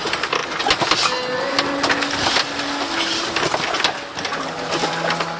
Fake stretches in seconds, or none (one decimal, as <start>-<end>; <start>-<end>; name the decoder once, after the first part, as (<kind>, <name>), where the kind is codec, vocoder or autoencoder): none